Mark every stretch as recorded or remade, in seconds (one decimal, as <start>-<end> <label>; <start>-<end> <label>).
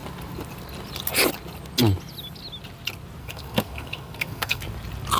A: 0.0-3.2 recorded; 3.2-4.6 remade; 4.6-5.2 recorded